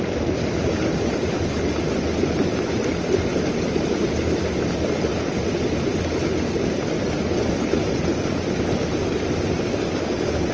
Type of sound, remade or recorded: recorded